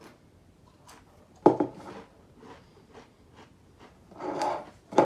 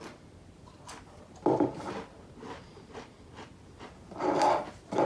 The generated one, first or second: second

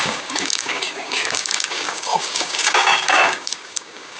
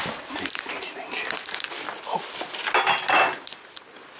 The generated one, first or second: first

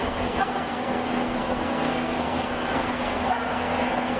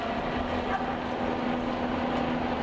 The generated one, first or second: first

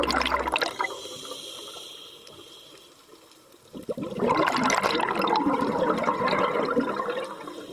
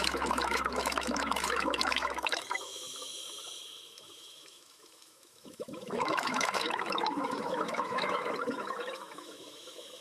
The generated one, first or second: second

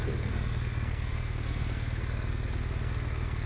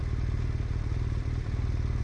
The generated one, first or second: first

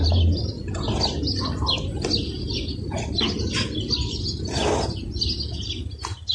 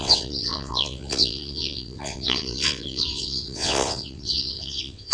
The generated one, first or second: second